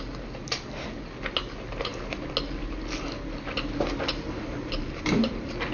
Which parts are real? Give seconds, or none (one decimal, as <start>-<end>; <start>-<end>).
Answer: 0.0-5.7